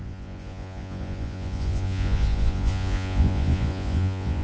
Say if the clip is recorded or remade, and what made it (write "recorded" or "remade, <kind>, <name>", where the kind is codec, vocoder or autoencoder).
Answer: remade, vocoder, Vocos